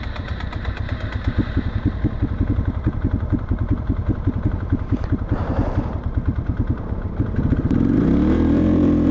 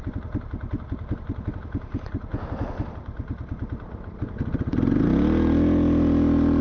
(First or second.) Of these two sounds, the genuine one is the second